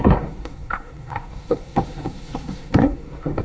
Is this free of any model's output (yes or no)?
no